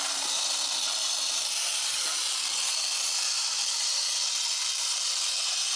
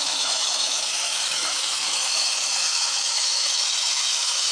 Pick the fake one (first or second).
second